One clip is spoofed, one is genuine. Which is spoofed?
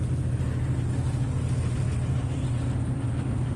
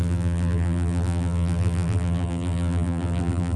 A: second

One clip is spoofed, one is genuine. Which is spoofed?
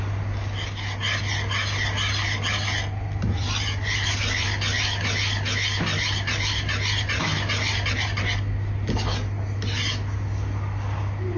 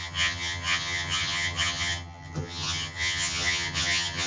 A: second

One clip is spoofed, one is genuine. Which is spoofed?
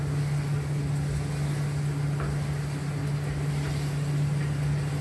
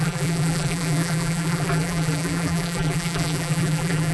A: second